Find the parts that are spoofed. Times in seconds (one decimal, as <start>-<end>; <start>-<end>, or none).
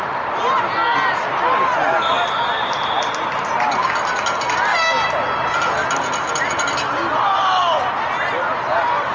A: none